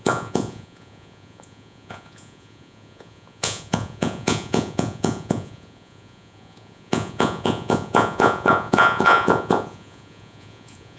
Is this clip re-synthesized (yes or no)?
yes